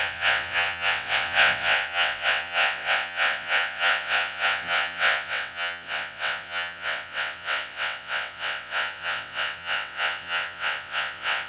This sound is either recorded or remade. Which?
remade